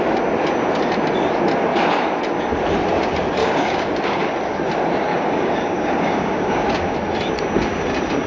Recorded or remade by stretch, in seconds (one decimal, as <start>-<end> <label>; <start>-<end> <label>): 0.0-3.4 recorded; 3.4-4.2 remade; 4.2-5.1 recorded; 5.1-6.8 remade; 6.8-8.3 recorded

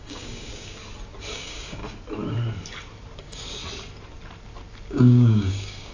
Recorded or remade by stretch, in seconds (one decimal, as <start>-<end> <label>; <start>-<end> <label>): 0.0-0.8 remade; 0.8-1.3 recorded; 1.3-1.8 remade; 1.8-3.2 recorded; 3.2-3.6 remade; 3.6-4.9 recorded; 4.9-5.9 remade